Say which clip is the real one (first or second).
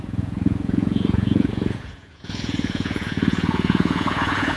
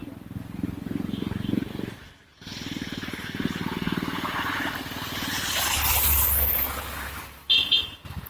second